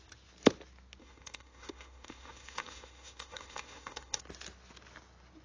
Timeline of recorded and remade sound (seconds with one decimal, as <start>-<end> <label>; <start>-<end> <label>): 0.0-1.0 recorded; 1.0-4.2 remade; 4.2-5.4 recorded